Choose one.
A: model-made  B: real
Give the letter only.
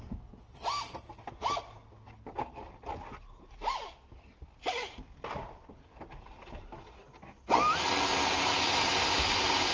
B